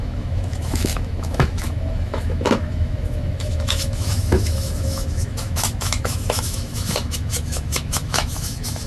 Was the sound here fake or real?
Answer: fake